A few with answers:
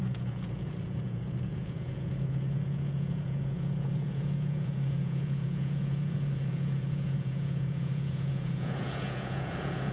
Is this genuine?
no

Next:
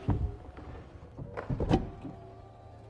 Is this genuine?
yes